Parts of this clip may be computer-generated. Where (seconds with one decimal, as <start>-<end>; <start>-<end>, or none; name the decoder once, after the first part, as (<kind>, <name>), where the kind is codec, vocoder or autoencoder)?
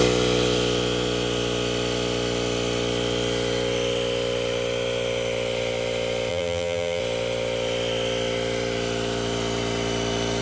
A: 6.3-7.0 (vocoder, BigVGAN v2)